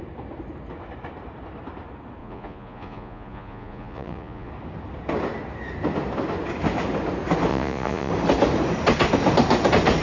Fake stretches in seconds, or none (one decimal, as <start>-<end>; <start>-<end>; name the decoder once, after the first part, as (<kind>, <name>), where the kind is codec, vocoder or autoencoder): 2.2-4.5 (vocoder, Vocos); 7.5-8.1